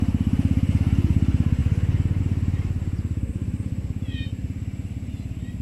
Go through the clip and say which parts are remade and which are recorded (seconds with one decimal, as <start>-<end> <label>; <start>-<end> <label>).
0.0-5.6 recorded